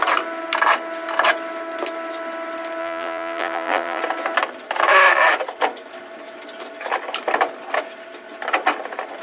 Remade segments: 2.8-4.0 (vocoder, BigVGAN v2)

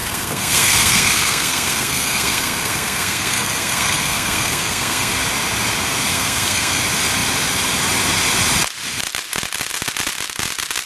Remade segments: 0.0-5.1 (codec, SNAC); 6.1-6.8

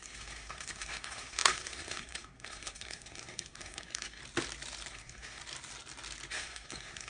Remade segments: 0.0-4.2 (codec, SNAC); 4.9-5.4; 6.3-7.1